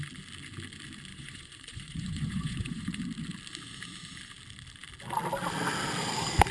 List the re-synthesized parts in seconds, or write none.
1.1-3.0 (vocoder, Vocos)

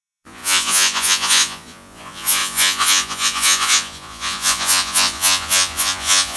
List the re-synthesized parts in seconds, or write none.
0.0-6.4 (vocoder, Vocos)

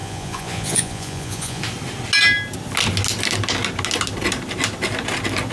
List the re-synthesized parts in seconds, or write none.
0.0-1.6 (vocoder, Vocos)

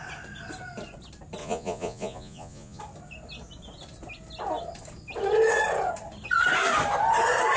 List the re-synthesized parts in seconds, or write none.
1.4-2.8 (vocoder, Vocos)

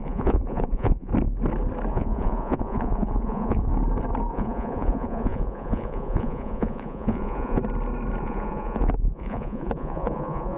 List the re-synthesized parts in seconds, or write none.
0.0-1.1 (vocoder, Vocos); 1.9-3.7; 4.3-7.6; 8.2-10.6

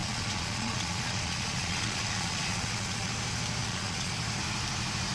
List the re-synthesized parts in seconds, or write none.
0.0-3.1 (vocoder, Vocos); 3.6-4.1

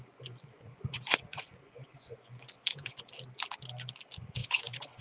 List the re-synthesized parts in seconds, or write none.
0.0-3.0 (vocoder, Vocos); 4.4-5.0